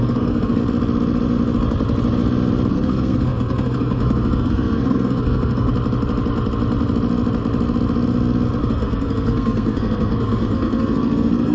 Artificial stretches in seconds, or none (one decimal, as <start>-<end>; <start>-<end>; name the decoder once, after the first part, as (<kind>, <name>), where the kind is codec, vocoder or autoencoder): 0.0-0.6 (codec, SNAC); 2.7-5.7; 8.6-11.5